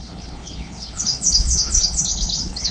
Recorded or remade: remade